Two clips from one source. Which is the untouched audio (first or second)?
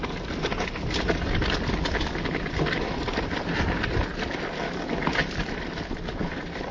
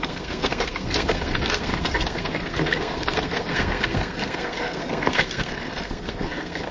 first